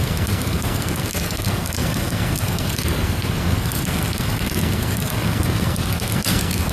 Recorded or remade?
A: remade